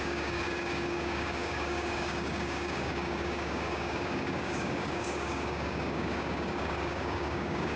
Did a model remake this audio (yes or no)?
yes